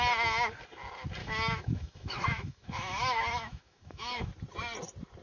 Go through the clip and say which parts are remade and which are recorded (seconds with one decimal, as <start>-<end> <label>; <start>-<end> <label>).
0.0-1.2 recorded; 1.2-4.3 remade; 4.3-5.2 recorded